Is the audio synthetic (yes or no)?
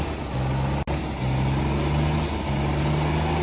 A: no